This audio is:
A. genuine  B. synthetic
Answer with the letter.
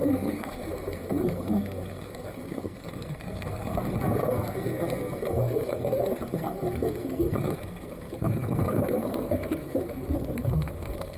B